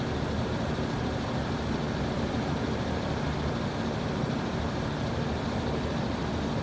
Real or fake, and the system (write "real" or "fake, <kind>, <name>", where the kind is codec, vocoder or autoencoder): real